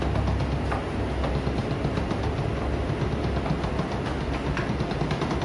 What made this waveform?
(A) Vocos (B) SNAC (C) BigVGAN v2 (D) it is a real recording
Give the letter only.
D